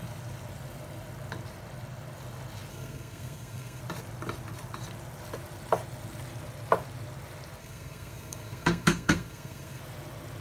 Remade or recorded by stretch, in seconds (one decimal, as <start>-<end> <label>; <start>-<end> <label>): 0.0-2.7 recorded; 2.7-3.8 remade; 3.8-7.6 recorded; 7.6-9.8 remade; 9.8-10.4 recorded